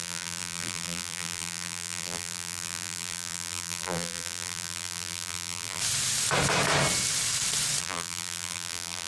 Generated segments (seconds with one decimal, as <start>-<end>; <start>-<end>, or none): 0.0-5.8; 7.8-9.1